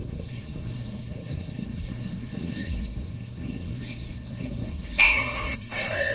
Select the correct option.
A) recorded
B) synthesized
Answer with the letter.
B